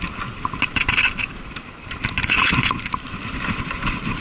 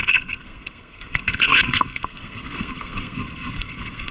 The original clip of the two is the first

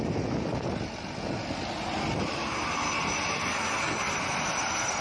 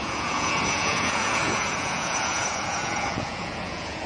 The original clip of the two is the first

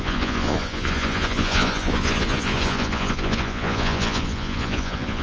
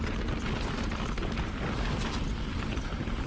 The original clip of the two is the second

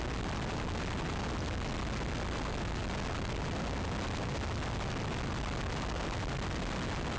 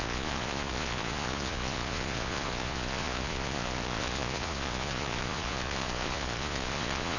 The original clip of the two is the first